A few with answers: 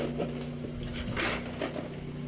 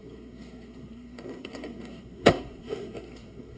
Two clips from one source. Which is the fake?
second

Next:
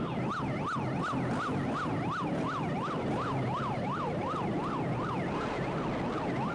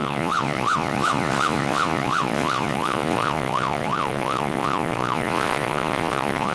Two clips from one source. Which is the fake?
second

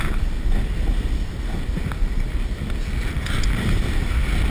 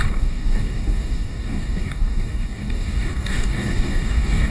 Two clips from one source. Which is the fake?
second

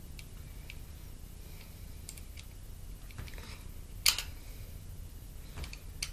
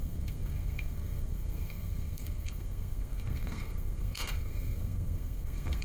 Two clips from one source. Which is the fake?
second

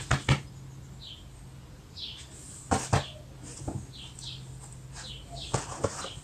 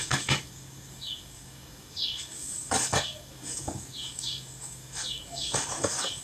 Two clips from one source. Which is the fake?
second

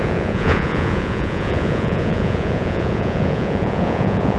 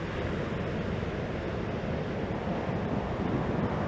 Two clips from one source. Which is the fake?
first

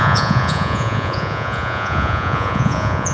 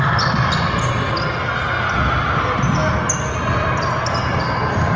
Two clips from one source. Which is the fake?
first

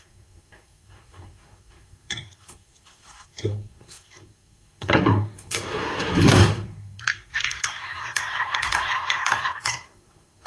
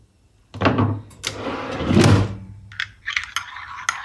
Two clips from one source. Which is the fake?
first